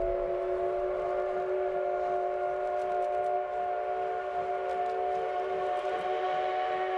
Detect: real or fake real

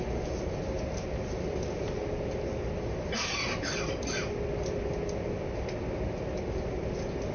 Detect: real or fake real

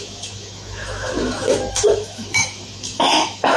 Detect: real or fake fake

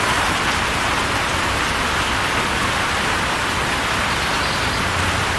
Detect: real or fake real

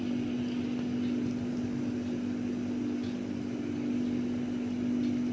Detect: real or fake real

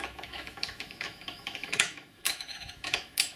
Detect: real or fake fake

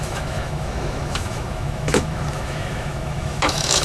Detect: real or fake fake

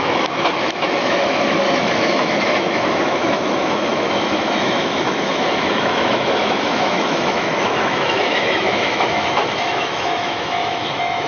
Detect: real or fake fake